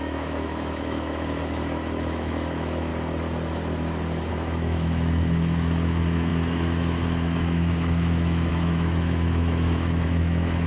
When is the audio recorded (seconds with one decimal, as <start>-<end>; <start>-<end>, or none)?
2.9-4.3